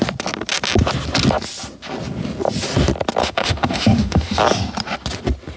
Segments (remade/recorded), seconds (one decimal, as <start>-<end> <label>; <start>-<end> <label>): 0.0-3.2 recorded; 3.2-4.4 remade; 4.4-5.6 recorded